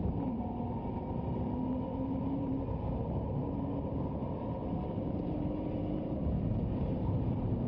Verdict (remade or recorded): remade